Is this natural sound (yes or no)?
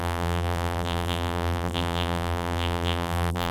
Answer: no